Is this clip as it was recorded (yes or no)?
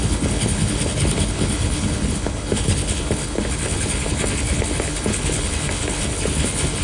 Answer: no